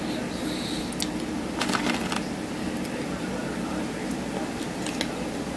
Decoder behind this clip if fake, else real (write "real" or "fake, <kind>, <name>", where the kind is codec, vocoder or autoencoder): real